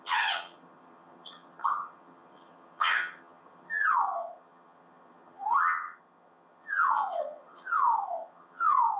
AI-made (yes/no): yes